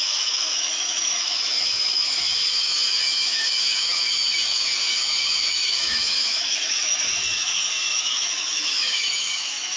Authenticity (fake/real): fake